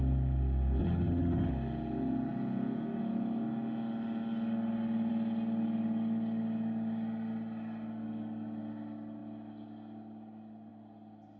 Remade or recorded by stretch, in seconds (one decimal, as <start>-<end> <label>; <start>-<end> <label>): 0.0-0.8 recorded; 0.8-1.5 remade; 1.5-11.4 recorded